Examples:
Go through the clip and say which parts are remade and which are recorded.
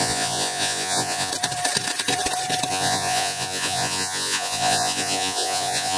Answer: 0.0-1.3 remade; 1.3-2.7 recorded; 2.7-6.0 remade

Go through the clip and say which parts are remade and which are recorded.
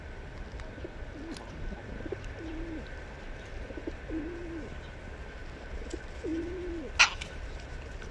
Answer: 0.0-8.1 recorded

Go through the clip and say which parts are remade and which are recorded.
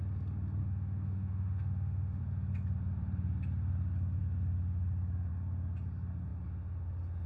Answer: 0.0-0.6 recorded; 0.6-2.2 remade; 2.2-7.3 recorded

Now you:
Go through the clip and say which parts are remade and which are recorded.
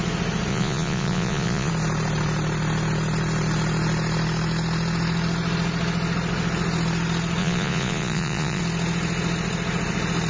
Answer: 0.0-0.5 recorded; 0.5-1.7 remade; 1.7-7.4 recorded; 7.4-8.6 remade; 8.6-10.3 recorded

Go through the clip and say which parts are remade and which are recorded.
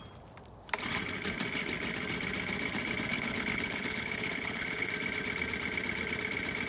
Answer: 0.0-3.1 recorded; 3.1-4.9 remade; 4.9-6.7 recorded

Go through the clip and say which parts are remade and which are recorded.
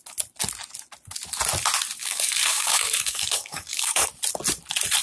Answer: 0.0-2.0 recorded; 2.0-4.1 remade; 4.1-5.0 recorded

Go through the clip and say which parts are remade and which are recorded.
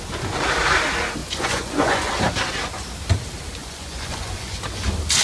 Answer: 0.0-1.2 recorded; 1.2-2.1 remade; 2.1-3.6 recorded; 3.6-4.6 remade; 4.6-5.2 recorded